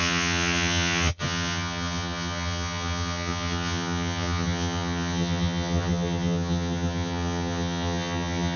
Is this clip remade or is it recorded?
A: remade